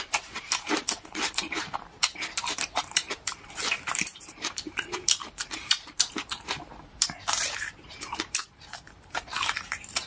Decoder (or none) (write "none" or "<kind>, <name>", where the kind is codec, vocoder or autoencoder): vocoder, BigVGAN v2